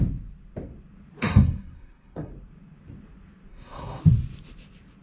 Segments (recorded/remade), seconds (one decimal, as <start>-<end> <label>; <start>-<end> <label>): 0.0-1.2 recorded; 1.2-2.3 remade; 2.3-3.5 recorded; 3.5-4.0 remade; 4.0-5.0 recorded